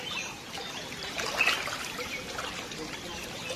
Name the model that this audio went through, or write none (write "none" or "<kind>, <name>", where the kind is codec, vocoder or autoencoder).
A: none